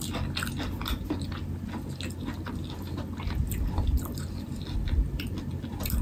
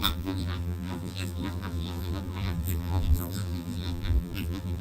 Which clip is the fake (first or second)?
second